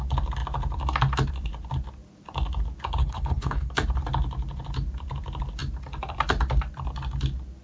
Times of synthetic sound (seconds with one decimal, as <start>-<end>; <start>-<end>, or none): 3.0-3.7